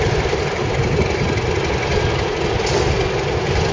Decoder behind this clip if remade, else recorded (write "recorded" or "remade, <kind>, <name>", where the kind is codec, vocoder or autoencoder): recorded